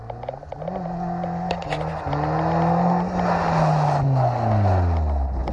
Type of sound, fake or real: real